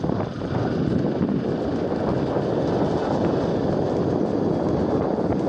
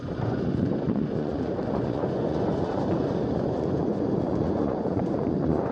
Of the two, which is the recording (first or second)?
first